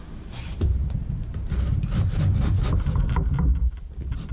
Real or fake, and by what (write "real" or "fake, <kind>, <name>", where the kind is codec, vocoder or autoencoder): real